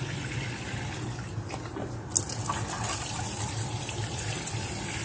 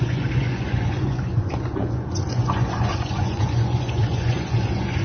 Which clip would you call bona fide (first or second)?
first